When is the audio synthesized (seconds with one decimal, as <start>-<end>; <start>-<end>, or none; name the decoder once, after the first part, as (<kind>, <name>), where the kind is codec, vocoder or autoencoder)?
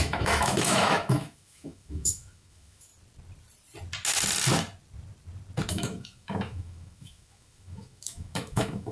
0.0-2.9 (autoencoder, DAC-VAE); 5.7-8.9